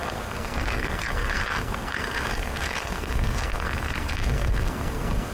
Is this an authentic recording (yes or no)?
no